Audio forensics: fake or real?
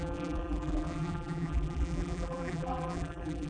fake